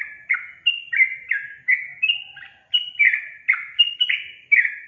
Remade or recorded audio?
recorded